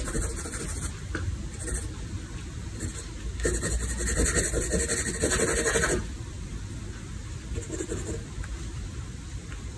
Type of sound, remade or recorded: recorded